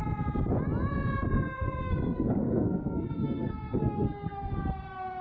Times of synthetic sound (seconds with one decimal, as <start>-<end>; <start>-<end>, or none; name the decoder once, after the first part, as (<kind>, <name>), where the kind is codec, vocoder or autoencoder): 1.4-4.5 (codec, SNAC)